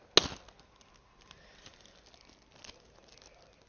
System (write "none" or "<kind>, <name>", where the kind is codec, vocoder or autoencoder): none